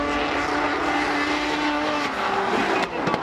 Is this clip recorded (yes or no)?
yes